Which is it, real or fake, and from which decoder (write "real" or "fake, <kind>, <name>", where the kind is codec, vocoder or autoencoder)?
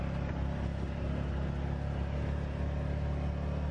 real